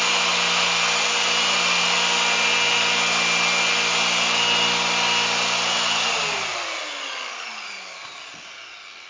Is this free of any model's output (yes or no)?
yes